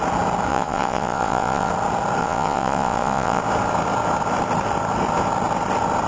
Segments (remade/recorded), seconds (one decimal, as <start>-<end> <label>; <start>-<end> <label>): 0.0-0.5 recorded; 0.5-1.7 remade; 1.7-2.2 recorded; 2.2-3.4 remade; 3.4-6.1 recorded